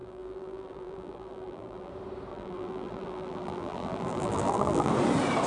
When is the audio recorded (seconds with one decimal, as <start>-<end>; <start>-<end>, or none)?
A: 1.9-2.3; 4.9-5.5